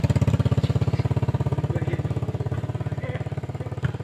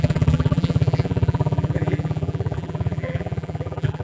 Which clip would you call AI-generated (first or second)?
second